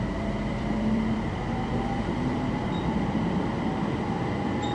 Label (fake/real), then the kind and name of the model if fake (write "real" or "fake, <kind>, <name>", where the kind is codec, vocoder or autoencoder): fake, vocoder, BigVGAN v2